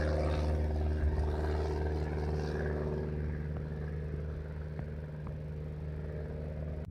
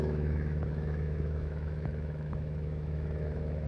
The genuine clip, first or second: first